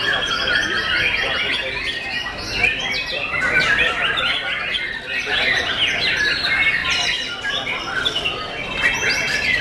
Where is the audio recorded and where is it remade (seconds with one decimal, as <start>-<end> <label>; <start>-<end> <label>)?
0.0-9.6 recorded